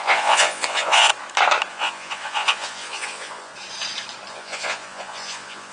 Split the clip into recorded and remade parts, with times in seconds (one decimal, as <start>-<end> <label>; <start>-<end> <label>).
0.0-1.1 remade; 1.1-1.7 recorded; 1.7-3.5 remade; 3.5-4.3 recorded; 4.3-5.7 remade